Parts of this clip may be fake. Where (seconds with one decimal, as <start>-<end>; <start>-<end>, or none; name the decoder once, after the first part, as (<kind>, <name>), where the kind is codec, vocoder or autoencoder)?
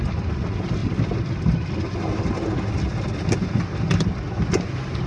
none